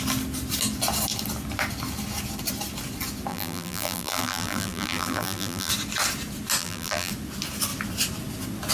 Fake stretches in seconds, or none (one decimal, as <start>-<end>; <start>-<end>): 3.3-5.7; 6.6-7.1